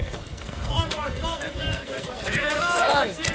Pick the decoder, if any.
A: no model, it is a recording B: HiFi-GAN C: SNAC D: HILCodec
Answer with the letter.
C